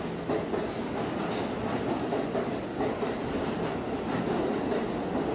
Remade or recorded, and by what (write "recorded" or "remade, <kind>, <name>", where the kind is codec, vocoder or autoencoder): recorded